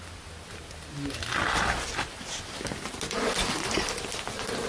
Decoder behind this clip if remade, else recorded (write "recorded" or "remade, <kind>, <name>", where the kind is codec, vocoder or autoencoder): recorded